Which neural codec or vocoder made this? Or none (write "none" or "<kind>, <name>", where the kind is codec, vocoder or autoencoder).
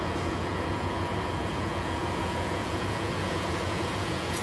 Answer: vocoder, Vocos